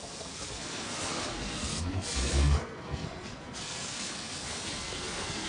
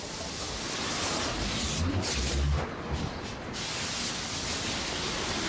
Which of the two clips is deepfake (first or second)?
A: first